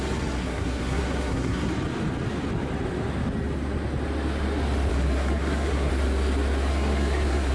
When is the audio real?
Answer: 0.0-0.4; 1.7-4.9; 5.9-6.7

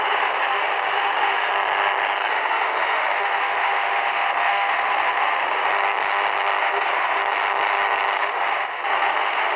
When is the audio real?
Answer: 1.5-2.3; 5.7-6.6; 7.2-8.2

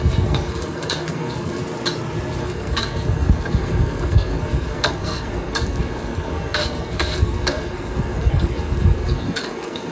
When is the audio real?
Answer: 1.6-2.4

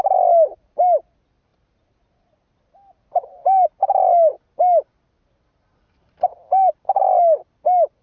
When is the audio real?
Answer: 0.0-8.0

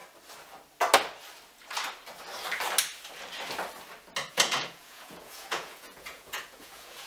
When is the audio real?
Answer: 0.0-4.3

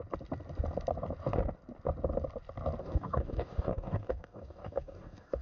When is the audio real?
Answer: 0.0-2.8

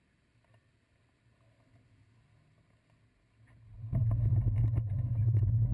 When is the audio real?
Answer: 0.0-5.7